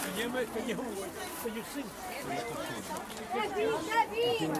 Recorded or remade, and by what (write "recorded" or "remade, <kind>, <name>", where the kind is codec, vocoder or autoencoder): remade, vocoder, BigVGAN v2